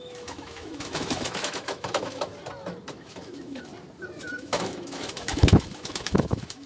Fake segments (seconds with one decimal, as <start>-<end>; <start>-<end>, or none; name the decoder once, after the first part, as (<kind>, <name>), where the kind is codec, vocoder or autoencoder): 0.0-2.3 (autoencoder, DAC-VAE); 3.0-3.7; 4.4-6.7